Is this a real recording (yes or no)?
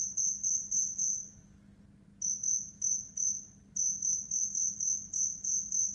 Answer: yes